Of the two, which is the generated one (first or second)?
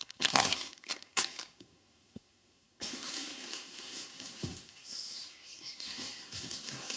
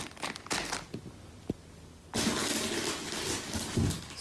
first